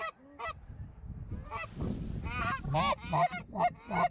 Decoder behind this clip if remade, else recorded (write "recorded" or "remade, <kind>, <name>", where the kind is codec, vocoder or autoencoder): recorded